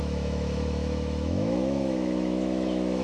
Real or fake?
fake